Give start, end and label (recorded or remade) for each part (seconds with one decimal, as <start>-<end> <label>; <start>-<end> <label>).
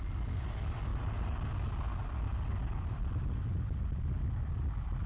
0.0-5.1 recorded